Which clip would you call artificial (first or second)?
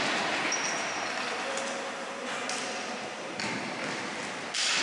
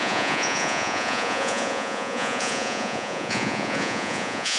second